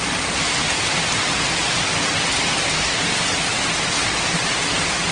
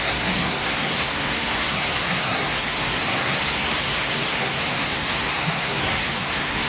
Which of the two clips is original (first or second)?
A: first